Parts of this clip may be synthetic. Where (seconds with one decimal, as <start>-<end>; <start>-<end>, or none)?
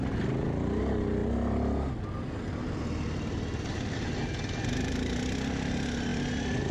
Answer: none